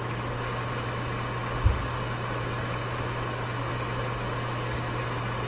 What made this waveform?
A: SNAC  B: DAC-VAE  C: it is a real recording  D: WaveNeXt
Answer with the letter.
C